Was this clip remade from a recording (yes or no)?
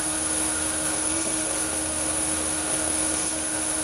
yes